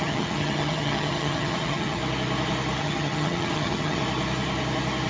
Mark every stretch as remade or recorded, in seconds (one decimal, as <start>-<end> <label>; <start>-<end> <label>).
0.0-2.0 remade; 2.0-2.8 recorded; 2.8-4.0 remade; 4.0-5.1 recorded